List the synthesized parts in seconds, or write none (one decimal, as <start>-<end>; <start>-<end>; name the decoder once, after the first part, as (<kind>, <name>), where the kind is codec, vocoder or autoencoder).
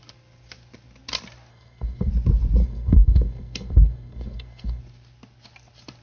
1.5-2.1 (codec, SNAC); 2.6-4.8